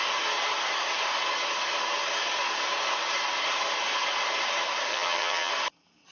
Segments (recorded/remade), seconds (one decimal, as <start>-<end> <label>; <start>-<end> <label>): 0.0-4.9 recorded; 4.9-5.5 remade; 5.5-6.1 recorded